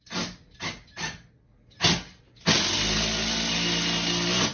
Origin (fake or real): real